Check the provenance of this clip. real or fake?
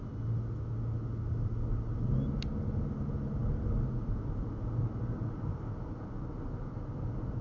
real